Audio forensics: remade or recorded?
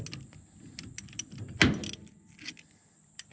recorded